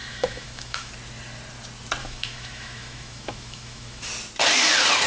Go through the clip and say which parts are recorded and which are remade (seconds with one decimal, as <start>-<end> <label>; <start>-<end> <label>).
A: 0.0-0.9 remade; 0.9-2.0 recorded; 2.0-4.1 remade; 4.1-5.1 recorded